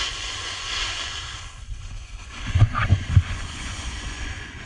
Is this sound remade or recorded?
remade